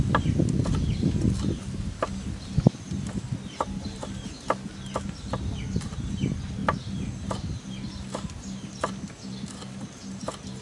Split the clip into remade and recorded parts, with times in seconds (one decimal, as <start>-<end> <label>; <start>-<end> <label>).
0.0-10.6 recorded